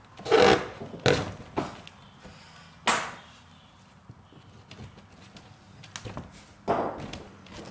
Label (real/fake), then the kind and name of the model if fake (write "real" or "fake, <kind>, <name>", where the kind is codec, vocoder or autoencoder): real